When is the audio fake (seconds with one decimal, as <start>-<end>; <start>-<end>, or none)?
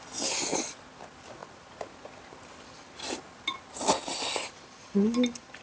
none